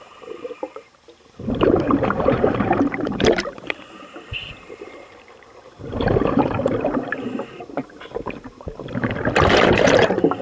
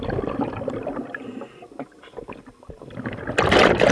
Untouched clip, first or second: second